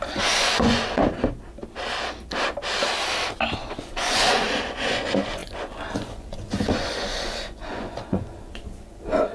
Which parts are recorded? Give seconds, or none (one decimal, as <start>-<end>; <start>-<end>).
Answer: 1.0-3.6